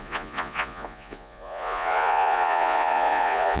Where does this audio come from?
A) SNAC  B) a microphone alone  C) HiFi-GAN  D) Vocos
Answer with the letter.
D